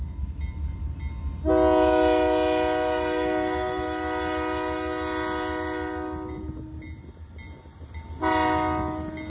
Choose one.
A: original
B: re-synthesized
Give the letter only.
A